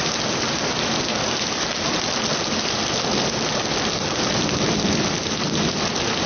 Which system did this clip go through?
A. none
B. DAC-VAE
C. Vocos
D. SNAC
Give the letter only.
A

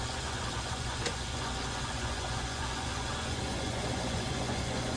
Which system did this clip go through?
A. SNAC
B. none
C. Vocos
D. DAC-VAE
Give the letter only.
C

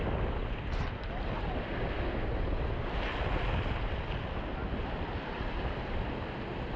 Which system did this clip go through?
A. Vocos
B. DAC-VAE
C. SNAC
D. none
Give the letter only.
D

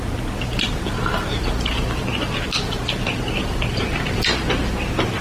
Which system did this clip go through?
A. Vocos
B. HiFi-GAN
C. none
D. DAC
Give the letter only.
C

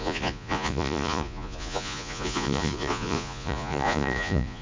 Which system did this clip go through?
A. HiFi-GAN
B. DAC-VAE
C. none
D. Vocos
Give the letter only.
D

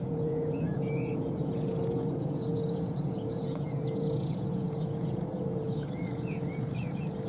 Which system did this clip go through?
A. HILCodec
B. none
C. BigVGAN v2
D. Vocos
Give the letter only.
D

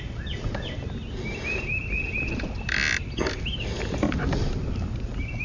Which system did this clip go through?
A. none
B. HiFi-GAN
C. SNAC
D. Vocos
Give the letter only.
A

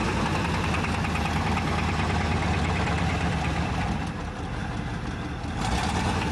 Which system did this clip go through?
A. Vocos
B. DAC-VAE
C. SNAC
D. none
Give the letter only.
D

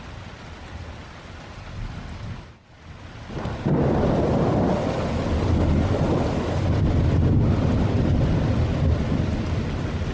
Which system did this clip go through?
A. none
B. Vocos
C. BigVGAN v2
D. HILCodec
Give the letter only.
A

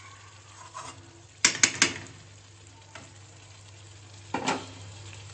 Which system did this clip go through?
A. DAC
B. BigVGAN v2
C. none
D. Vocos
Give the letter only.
C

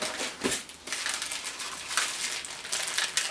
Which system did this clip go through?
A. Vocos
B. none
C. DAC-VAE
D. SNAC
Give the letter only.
B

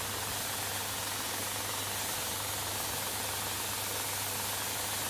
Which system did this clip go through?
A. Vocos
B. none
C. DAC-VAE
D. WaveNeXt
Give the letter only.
B